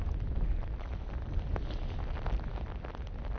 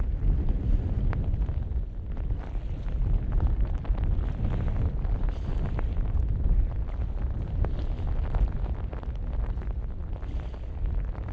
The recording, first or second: first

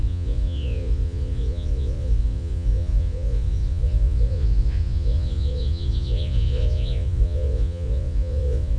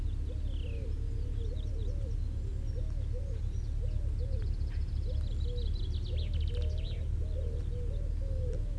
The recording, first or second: second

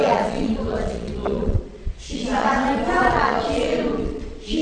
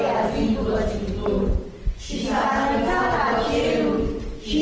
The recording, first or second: second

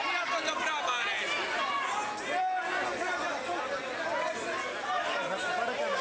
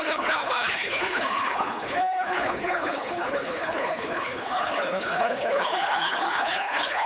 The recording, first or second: first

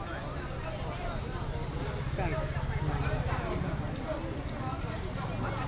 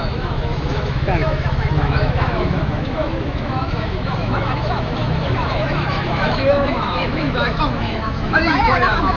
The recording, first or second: first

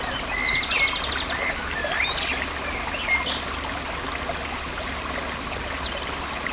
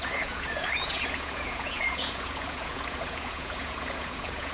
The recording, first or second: first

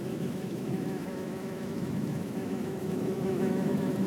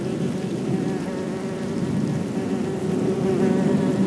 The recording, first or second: second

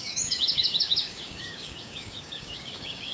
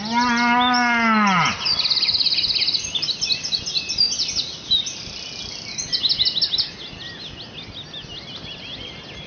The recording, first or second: second